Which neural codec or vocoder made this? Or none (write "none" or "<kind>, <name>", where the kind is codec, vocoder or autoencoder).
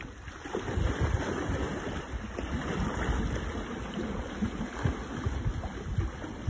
none